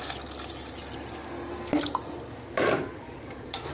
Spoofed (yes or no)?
no